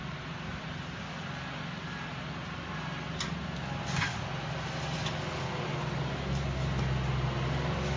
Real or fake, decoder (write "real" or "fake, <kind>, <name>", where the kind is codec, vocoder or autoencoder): real